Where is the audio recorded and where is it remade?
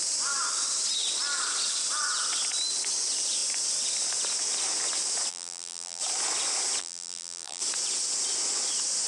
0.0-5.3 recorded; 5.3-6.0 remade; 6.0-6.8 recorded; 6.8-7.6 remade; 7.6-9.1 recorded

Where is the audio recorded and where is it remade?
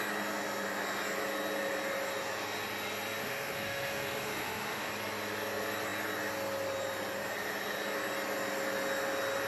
0.0-3.2 recorded; 3.2-4.9 remade; 4.9-9.5 recorded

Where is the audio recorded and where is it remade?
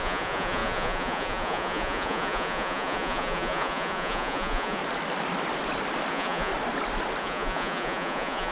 0.0-4.8 remade; 4.8-6.1 recorded; 6.1-6.5 remade; 6.5-7.2 recorded; 7.2-8.5 remade